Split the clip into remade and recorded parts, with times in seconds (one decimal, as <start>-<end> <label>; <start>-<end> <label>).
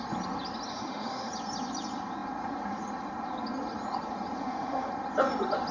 0.0-0.7 recorded; 0.7-1.3 remade; 1.3-4.4 recorded; 4.4-4.9 remade; 4.9-5.7 recorded